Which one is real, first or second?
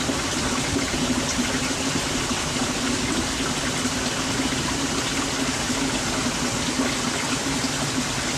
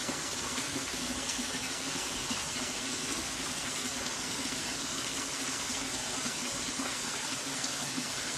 first